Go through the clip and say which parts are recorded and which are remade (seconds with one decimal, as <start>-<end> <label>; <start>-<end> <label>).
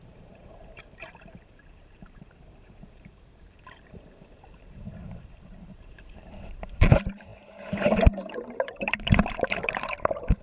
0.0-10.4 remade